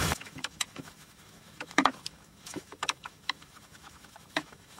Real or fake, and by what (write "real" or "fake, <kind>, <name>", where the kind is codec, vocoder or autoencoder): fake, autoencoder, DAC-VAE